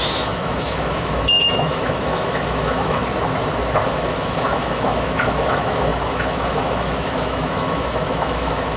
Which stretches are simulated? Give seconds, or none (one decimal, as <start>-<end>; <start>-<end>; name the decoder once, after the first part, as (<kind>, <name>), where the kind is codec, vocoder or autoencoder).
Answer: 0.0-3.0 (autoencoder, DAC-VAE); 3.9-8.8